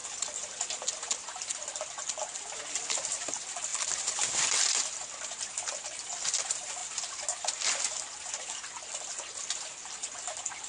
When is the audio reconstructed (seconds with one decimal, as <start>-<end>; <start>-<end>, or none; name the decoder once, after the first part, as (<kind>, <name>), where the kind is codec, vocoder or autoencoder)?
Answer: none